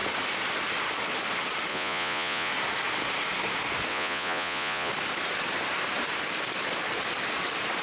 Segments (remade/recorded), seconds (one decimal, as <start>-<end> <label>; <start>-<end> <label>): 0.0-1.7 recorded; 1.7-2.5 remade; 2.5-3.9 recorded; 3.9-4.9 remade; 4.9-7.8 recorded